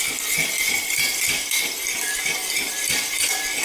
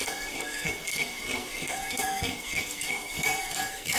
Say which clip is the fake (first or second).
second